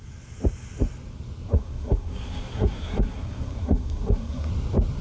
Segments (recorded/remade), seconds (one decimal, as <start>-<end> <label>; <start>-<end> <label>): 0.0-1.5 recorded; 1.5-4.5 remade; 4.5-5.0 recorded

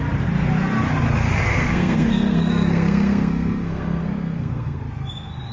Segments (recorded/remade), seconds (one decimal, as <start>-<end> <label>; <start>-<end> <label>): 0.0-1.5 recorded; 1.5-4.8 remade; 4.8-5.5 recorded